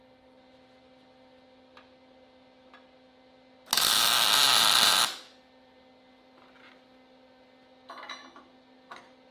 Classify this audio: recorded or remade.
recorded